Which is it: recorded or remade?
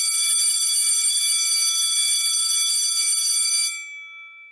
recorded